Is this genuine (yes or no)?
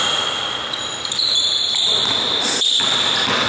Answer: no